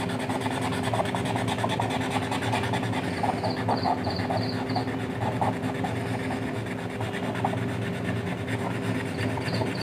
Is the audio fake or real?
real